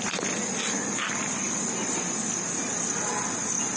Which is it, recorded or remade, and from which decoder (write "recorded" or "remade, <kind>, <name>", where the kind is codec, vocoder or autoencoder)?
recorded